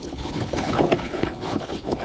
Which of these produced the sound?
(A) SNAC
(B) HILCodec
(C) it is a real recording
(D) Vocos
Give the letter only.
B